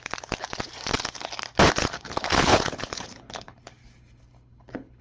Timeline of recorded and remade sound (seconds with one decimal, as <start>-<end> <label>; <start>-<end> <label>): 0.0-1.8 recorded; 1.8-5.0 remade